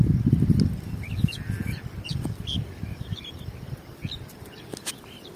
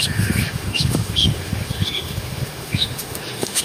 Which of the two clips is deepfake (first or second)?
second